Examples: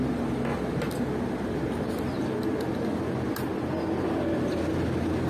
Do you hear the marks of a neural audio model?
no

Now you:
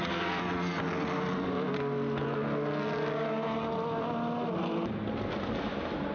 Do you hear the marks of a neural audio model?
no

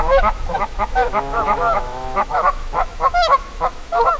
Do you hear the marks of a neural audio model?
yes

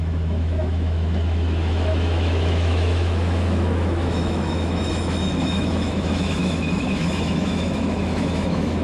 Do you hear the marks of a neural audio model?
yes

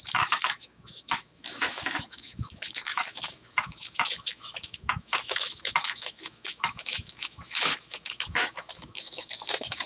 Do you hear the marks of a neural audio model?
yes